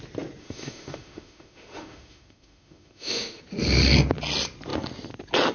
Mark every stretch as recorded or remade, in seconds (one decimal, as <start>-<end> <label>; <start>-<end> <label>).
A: 0.0-0.4 recorded; 0.4-3.4 remade; 3.4-5.5 recorded